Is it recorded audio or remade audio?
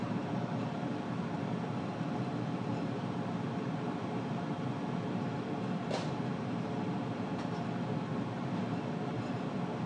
remade